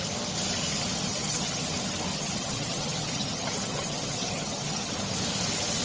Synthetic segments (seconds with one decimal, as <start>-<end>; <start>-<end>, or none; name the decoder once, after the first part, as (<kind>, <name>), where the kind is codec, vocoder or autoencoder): 1.1-1.6 (vocoder, HiFi-GAN); 2.1-4.9